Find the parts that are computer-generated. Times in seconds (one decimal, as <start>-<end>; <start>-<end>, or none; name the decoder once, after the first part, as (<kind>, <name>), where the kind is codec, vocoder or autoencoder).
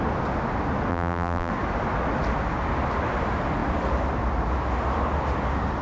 0.9-1.5 (vocoder, BigVGAN v2)